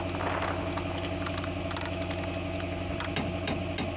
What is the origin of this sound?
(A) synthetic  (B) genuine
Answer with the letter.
B